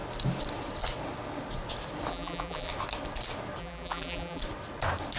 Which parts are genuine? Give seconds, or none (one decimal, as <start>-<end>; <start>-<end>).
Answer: 0.0-2.1; 2.7-3.6; 4.4-5.2